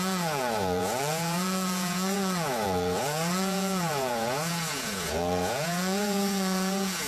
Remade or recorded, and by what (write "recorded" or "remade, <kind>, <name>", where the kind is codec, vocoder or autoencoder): remade, vocoder, Vocos